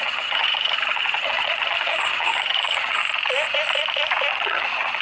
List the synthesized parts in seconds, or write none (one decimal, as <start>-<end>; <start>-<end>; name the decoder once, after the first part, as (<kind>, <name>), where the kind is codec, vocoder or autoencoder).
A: 0.0-3.0 (vocoder, HiFi-GAN); 4.3-5.0